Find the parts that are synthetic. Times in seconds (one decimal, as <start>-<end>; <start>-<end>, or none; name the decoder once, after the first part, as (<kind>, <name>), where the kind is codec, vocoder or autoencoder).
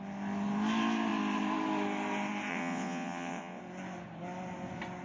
2.5-3.6 (vocoder, WaveNeXt)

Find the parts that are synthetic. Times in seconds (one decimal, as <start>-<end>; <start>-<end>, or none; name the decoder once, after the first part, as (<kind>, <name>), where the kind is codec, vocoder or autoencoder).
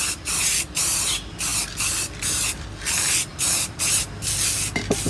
none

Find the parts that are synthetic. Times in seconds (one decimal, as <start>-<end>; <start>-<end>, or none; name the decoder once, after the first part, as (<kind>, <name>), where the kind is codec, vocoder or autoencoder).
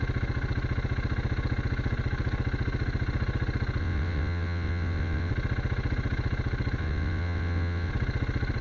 3.8-5.3 (vocoder, WaveNeXt); 6.8-7.9